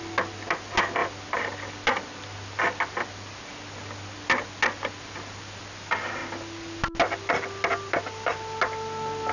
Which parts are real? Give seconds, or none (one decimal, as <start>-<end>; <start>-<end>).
0.0-9.3